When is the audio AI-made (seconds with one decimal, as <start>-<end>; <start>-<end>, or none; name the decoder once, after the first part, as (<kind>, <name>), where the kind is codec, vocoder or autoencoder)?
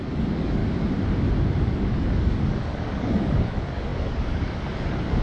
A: 0.0-0.6 (codec, DAC); 1.6-5.2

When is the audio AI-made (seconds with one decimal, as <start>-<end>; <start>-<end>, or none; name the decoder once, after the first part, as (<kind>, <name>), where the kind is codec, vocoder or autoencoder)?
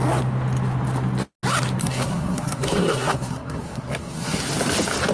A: 1.8-4.4 (codec, SNAC)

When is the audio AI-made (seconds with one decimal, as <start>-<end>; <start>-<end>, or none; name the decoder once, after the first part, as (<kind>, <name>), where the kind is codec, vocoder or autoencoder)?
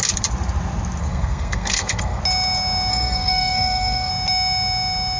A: 1.0-2.2 (codec, SNAC); 2.9-4.1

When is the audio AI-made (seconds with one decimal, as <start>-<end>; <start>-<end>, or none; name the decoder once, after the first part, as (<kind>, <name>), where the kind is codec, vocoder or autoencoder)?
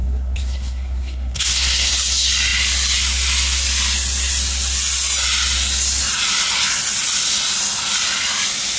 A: 0.0-1.9 (codec, SNAC)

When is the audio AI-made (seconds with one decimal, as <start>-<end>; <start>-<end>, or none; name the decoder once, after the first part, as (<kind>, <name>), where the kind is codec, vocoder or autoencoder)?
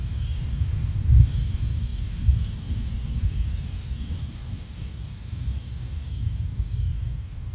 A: 0.0-7.5 (codec, DAC)